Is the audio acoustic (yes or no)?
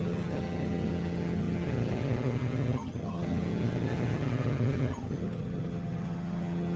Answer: no